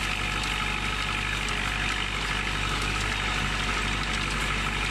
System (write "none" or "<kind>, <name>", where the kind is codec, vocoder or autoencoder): none